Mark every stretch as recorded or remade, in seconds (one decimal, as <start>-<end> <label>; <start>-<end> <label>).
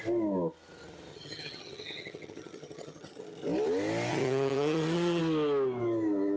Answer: 0.0-1.1 recorded; 1.1-3.2 remade; 3.2-4.1 recorded; 4.1-5.2 remade; 5.2-6.4 recorded